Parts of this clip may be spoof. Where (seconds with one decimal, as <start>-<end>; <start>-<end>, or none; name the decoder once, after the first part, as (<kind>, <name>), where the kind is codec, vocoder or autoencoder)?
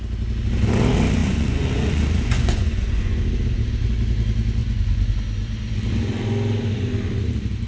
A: 1.2-3.2 (vocoder, Vocos); 4.6-5.1